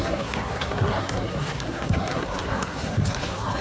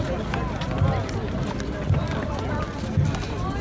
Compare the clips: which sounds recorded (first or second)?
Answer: second